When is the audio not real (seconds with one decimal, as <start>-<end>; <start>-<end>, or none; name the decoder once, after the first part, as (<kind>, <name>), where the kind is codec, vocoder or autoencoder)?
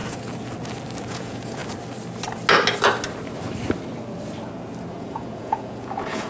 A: 1.1-1.6 (vocoder, Vocos); 4.9-6.3